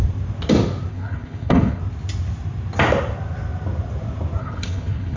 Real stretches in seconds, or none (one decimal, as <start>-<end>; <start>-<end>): 0.0-0.9; 1.8-4.4